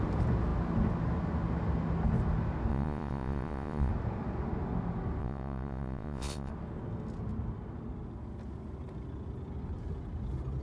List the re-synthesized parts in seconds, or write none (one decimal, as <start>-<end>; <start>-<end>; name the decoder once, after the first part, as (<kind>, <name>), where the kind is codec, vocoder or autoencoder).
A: 2.7-3.9 (vocoder, Vocos); 5.2-6.5